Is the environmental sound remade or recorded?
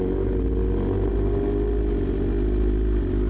recorded